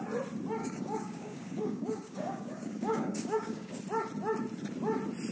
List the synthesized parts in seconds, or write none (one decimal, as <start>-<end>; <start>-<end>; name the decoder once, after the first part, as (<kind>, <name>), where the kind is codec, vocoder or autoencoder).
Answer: 0.6-3.8 (codec, DAC)